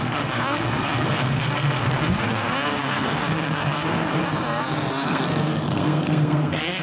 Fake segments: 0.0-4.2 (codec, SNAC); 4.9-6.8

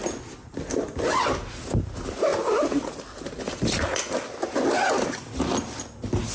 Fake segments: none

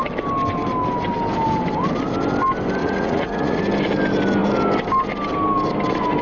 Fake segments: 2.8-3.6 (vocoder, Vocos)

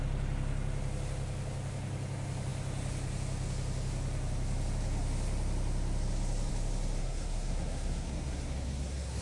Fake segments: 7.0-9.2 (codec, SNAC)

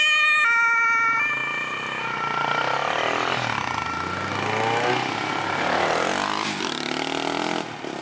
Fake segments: none

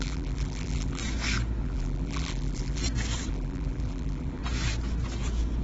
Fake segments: 0.0-1.0 (vocoder, BigVGAN v2); 1.6-2.8; 3.3-4.4